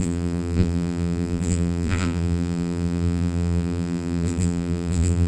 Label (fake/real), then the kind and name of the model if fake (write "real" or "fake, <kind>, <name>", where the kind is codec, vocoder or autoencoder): fake, vocoder, BigVGAN v2